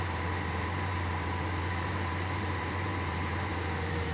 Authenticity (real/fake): fake